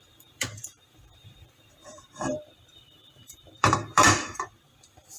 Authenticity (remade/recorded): remade